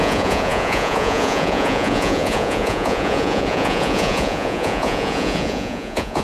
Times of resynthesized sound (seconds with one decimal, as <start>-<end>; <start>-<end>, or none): 0.0-6.2

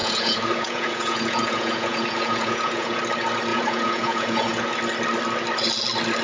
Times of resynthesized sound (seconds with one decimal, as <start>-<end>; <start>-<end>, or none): 0.0-3.0; 3.5-4.7